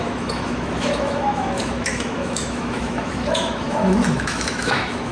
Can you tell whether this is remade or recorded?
remade